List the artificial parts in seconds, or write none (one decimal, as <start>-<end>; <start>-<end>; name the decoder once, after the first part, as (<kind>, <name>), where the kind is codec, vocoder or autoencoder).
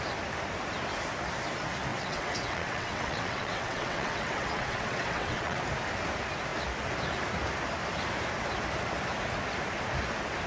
1.9-5.6 (vocoder, WaveNeXt)